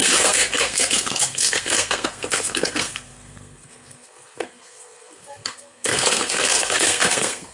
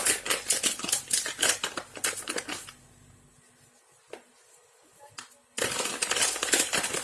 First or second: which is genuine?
second